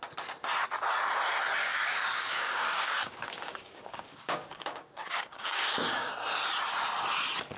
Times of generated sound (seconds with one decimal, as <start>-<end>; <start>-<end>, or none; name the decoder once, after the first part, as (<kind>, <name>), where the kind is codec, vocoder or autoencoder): 1.6-6.1 (codec, DAC)